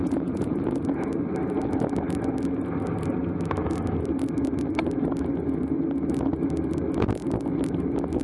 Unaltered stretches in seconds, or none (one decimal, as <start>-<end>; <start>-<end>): 0.6-8.2

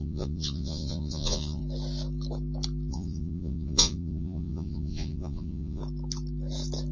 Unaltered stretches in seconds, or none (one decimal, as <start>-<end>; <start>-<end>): 1.6-2.9; 5.8-6.9